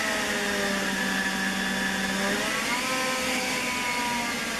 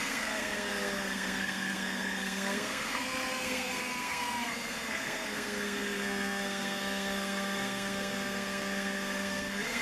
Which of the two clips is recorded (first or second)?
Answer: first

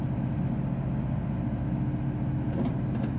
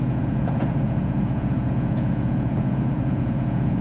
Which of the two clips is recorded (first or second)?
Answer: first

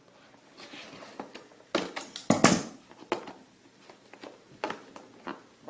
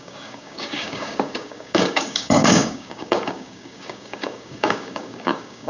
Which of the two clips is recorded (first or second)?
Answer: first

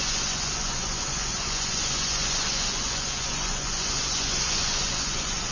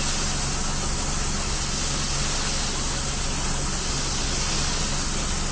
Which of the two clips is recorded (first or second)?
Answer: second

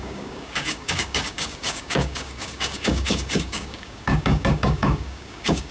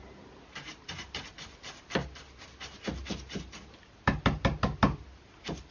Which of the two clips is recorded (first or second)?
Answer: second